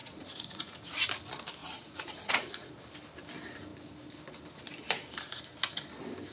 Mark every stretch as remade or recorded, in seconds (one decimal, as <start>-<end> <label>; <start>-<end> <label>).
0.0-1.1 remade; 1.1-1.6 recorded; 1.6-2.7 remade; 2.7-6.3 recorded